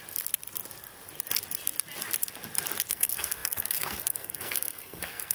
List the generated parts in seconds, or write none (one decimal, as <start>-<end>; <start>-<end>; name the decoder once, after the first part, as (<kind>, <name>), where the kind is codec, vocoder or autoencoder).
2.9-5.3 (codec, SNAC)